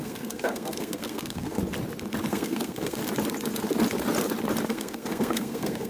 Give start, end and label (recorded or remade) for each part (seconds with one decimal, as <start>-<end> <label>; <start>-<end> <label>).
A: 0.0-1.6 remade; 1.6-2.3 recorded; 2.3-3.0 remade; 3.0-4.7 recorded; 4.7-5.9 remade